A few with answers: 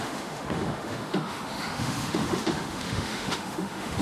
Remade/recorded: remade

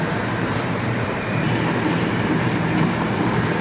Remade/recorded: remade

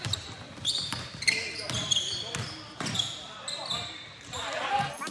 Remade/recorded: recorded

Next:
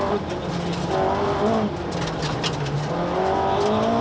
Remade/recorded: recorded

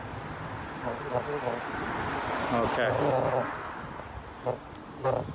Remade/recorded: recorded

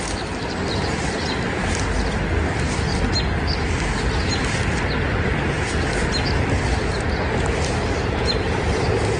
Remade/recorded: recorded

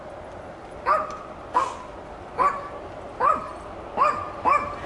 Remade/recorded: recorded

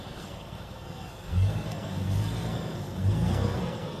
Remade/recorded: remade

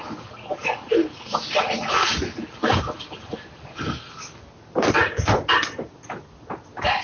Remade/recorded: recorded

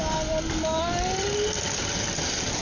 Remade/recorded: recorded